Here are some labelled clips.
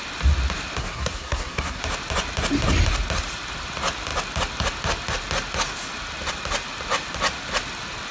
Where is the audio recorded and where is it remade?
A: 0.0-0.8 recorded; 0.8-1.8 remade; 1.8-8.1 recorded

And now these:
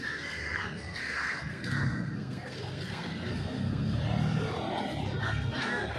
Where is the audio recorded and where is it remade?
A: 0.0-4.0 remade; 4.0-5.2 recorded; 5.2-6.0 remade

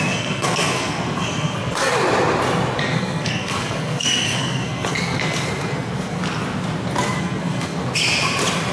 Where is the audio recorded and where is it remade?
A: 0.0-1.9 remade; 1.9-2.8 recorded; 2.8-6.2 remade; 6.2-7.2 recorded; 7.2-7.8 remade; 7.8-8.7 recorded

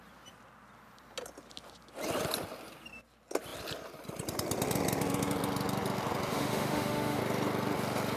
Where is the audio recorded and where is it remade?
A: 0.0-6.3 recorded; 6.3-7.2 remade; 7.2-8.2 recorded

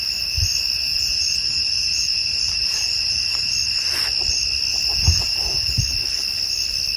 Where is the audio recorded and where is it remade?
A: 0.0-0.9 recorded; 0.9-3.5 remade; 3.5-4.7 recorded; 4.7-5.8 remade; 5.8-7.0 recorded

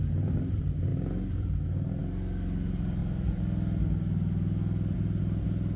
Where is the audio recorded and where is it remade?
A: 0.0-5.8 recorded

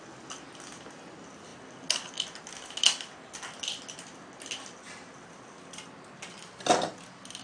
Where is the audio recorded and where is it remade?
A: 0.0-7.4 recorded